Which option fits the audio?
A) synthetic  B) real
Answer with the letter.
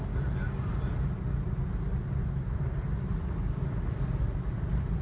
B